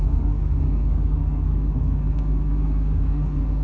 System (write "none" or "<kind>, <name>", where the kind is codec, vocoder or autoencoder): codec, SNAC